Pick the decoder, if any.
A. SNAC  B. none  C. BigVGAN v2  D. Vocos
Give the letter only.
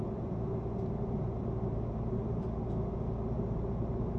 B